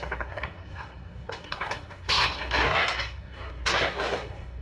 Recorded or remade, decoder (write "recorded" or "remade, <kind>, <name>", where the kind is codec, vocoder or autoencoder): remade, codec, SNAC